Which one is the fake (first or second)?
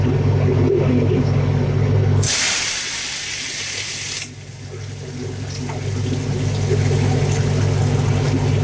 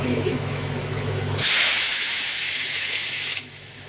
second